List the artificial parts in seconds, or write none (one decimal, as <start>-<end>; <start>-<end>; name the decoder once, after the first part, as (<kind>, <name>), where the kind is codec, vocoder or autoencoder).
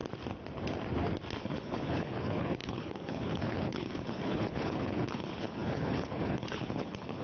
1.4-7.2 (codec, HILCodec)